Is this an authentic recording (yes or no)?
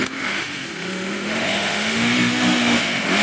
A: no